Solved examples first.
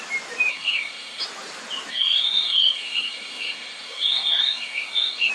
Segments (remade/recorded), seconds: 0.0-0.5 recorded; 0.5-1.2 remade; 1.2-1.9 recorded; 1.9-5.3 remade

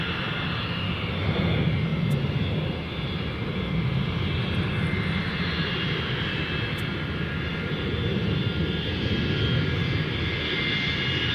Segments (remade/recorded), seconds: 0.0-11.3 recorded

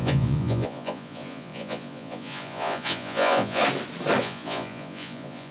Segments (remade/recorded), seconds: 0.0-3.6 remade; 3.6-4.2 recorded; 4.2-5.5 remade

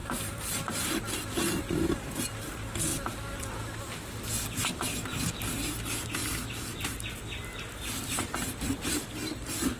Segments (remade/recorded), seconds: 0.0-0.7 remade; 0.7-6.2 recorded; 6.2-6.9 remade; 6.9-9.8 recorded

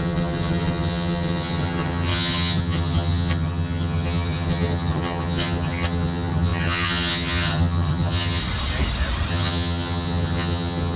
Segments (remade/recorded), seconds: 0.0-8.4 remade; 8.4-9.3 recorded; 9.3-11.0 remade

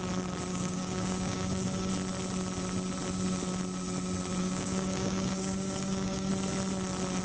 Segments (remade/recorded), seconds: 0.0-0.5 recorded; 0.5-1.9 remade; 1.9-4.4 recorded; 4.4-6.3 remade; 6.3-7.2 recorded

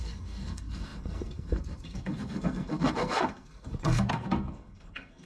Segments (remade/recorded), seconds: 0.0-5.3 remade